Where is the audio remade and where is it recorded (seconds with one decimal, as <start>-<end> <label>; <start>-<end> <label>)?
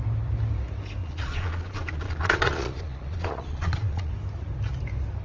0.0-1.0 recorded; 1.0-4.1 remade; 4.1-5.2 recorded